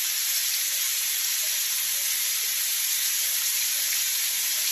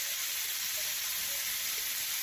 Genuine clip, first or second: second